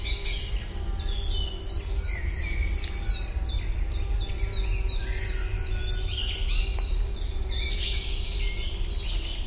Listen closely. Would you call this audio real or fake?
real